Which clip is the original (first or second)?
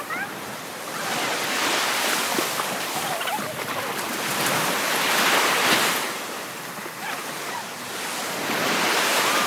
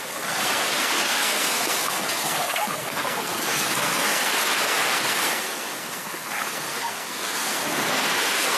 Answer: first